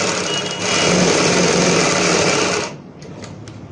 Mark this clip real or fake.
real